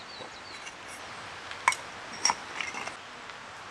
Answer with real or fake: real